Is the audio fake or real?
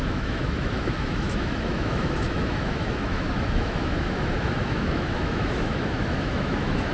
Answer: fake